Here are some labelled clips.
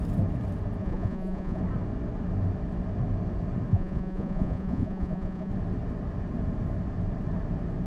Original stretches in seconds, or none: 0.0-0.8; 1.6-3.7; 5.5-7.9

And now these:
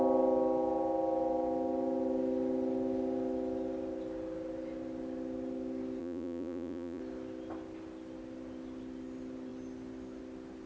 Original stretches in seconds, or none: 0.0-6.0; 7.0-10.7

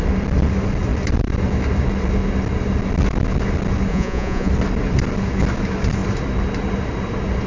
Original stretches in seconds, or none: 0.0-3.9; 4.5-7.5

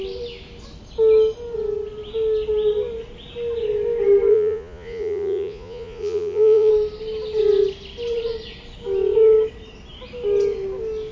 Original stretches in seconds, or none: 0.0-4.3; 6.7-11.1

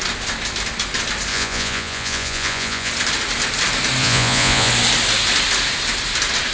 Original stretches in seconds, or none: 0.0-1.3; 2.9-4.0; 4.7-6.5

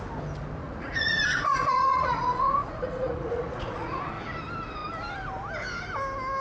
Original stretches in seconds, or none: 0.0-0.6; 4.1-6.4